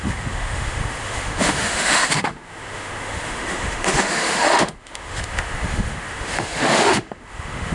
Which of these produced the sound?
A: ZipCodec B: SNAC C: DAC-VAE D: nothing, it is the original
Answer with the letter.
C